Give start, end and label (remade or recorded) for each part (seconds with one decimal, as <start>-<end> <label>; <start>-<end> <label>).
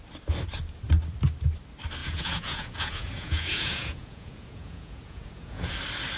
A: 0.0-2.0 recorded; 2.0-5.7 remade; 5.7-6.2 recorded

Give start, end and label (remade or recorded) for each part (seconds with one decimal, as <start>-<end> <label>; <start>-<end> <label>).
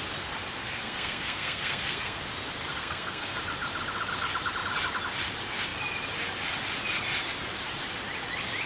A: 0.0-0.6 recorded; 0.6-2.2 remade; 2.2-2.8 recorded; 2.8-3.4 remade; 3.4-8.7 recorded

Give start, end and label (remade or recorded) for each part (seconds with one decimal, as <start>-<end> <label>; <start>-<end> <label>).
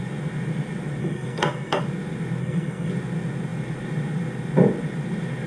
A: 0.0-1.0 recorded; 1.0-1.8 remade; 1.8-2.4 recorded; 2.4-2.9 remade; 2.9-5.5 recorded